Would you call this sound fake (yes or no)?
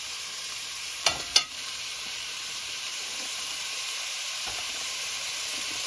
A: yes